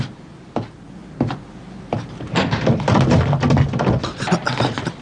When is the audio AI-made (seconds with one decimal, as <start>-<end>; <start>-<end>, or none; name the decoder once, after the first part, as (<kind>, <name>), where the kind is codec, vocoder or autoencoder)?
none